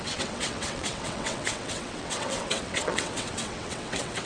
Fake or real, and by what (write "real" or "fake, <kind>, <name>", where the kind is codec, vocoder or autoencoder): fake, vocoder, WaveNeXt